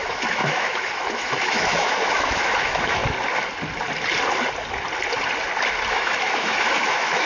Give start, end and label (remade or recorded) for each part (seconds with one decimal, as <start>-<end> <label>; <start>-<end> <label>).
0.0-3.0 remade; 3.0-5.9 recorded; 5.9-7.3 remade